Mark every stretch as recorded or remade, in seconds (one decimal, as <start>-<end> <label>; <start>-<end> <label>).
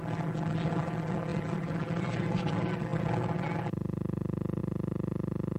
0.0-1.3 recorded; 1.3-2.5 remade; 2.5-5.6 recorded